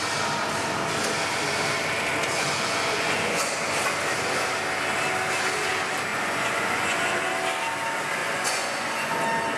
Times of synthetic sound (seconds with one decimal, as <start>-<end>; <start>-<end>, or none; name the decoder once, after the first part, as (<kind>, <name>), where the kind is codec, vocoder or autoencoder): 2.3-3.5 (vocoder, Vocos); 6.1-7.1; 8.2-9.2